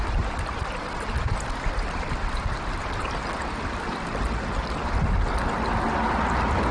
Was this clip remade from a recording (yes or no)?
no